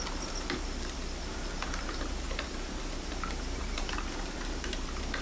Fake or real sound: real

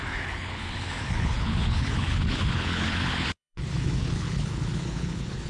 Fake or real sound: fake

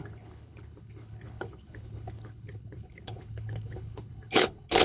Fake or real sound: fake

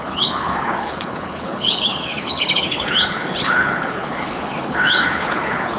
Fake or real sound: fake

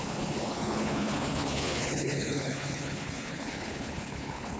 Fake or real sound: fake